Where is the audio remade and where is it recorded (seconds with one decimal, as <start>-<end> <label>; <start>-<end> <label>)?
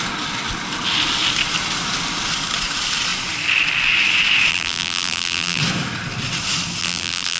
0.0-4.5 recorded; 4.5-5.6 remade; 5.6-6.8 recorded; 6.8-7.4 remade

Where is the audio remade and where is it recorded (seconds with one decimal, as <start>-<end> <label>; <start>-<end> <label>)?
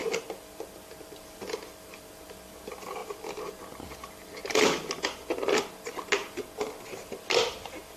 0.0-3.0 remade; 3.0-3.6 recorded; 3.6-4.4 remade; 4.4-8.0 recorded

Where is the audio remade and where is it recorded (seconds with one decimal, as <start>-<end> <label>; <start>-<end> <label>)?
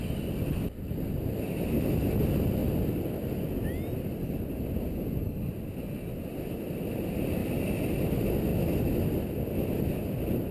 0.0-10.5 recorded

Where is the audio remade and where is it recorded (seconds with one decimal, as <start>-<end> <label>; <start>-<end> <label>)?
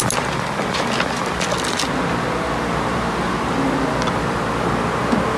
0.0-5.4 recorded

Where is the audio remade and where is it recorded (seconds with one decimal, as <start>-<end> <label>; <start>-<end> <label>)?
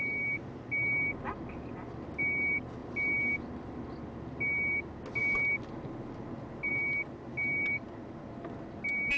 0.0-9.2 recorded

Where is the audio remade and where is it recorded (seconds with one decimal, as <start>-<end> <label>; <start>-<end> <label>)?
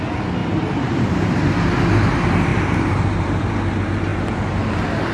0.0-0.4 recorded; 0.4-1.4 remade; 1.4-2.5 recorded; 2.5-3.5 remade; 3.5-5.1 recorded